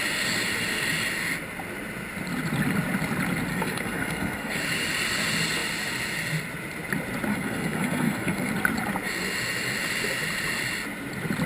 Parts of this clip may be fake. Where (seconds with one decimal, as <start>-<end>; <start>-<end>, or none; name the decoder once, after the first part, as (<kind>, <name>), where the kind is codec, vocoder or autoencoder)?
3.5-4.6 (codec, SNAC); 7.3-8.5